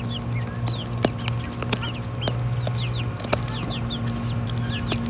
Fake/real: real